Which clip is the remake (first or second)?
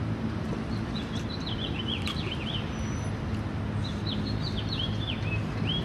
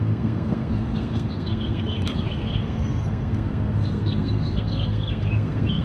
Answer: second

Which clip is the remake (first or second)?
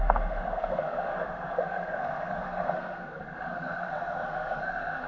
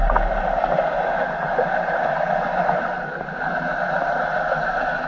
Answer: first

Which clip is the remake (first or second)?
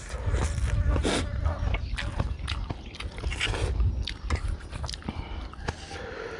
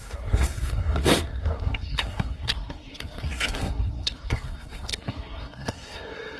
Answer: second